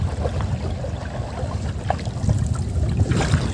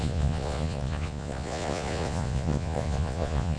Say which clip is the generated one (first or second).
second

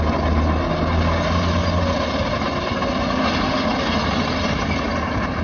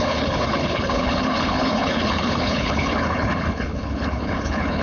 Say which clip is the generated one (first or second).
second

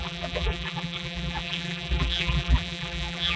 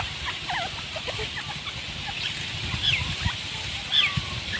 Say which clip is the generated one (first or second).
first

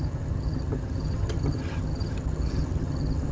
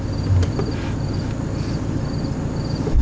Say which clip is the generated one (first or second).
first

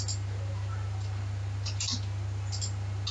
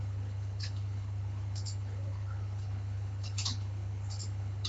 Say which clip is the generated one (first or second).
second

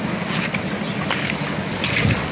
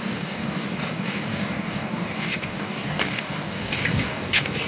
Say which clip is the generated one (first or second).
second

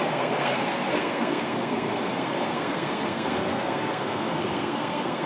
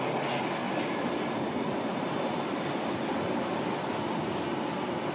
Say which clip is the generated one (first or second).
first